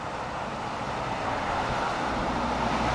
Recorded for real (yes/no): yes